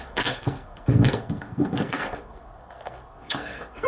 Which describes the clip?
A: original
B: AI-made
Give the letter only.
B